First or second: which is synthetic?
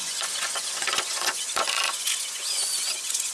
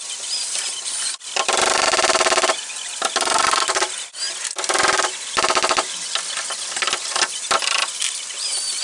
first